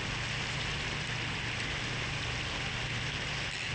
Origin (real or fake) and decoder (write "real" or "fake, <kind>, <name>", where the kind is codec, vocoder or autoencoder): real